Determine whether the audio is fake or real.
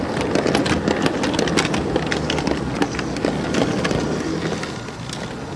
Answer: real